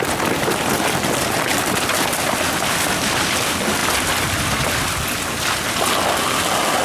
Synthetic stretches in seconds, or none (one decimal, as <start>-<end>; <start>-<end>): none